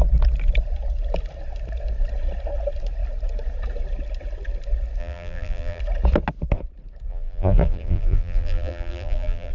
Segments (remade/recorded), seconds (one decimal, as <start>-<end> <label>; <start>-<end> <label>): 0.0-5.0 recorded; 5.0-5.8 remade; 5.8-7.1 recorded; 7.1-9.5 remade